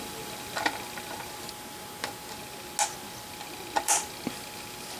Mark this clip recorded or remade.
recorded